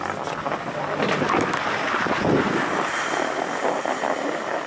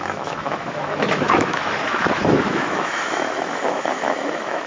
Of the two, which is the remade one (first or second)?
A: second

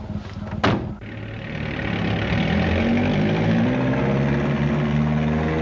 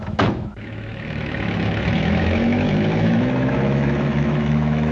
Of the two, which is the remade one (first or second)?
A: second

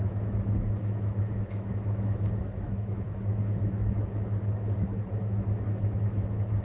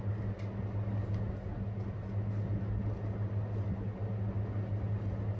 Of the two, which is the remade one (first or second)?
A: first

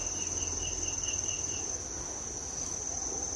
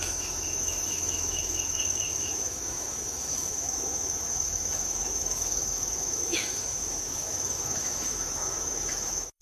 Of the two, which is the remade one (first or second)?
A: second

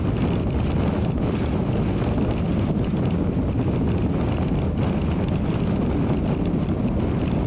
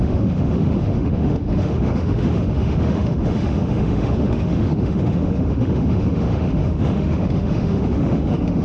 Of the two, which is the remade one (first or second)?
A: second